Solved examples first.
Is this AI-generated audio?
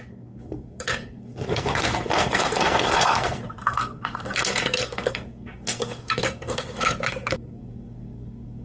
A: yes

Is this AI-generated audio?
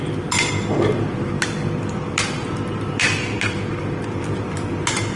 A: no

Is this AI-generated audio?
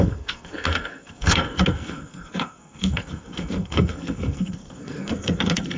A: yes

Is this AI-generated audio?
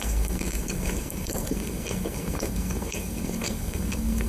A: yes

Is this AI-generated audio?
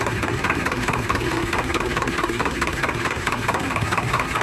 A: yes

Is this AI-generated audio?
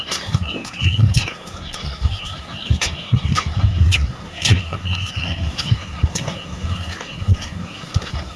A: yes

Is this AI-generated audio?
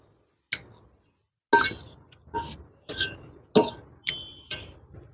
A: no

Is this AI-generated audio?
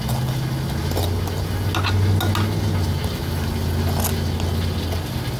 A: no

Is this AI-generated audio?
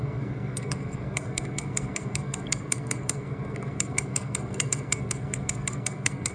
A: yes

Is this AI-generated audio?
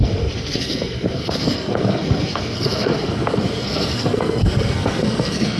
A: yes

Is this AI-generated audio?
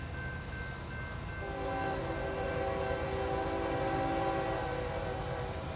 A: no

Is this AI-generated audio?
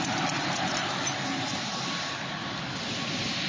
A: no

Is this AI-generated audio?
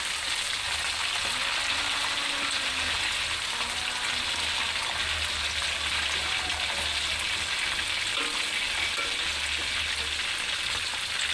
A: no